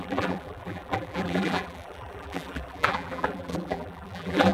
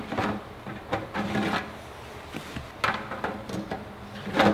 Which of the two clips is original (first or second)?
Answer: second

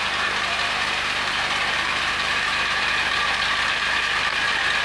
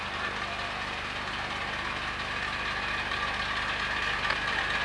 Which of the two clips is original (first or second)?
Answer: second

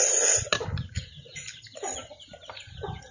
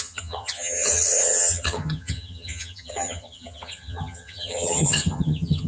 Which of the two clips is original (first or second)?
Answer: first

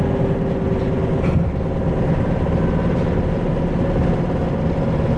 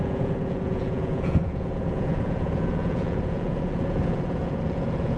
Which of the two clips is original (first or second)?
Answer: first